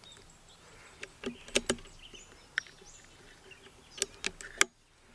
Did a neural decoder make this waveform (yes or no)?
no